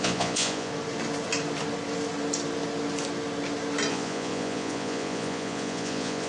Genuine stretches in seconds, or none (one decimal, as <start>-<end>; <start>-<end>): 0.7-3.9